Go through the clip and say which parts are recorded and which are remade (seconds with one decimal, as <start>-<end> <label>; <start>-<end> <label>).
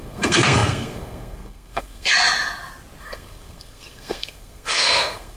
0.0-2.1 remade; 2.1-3.0 recorded; 3.0-5.4 remade